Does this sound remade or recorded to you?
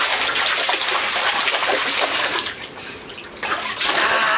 recorded